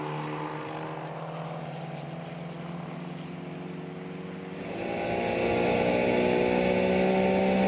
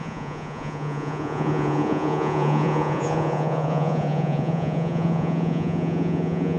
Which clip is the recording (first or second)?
first